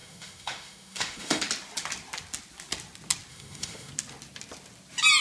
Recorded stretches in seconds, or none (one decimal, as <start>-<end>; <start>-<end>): 1.4-3.3; 3.9-5.2